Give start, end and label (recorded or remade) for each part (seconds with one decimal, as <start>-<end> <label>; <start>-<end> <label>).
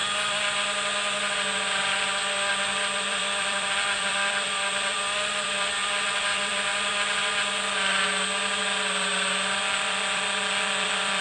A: 0.0-2.5 recorded; 2.5-6.7 remade; 6.7-9.7 recorded; 9.7-11.2 remade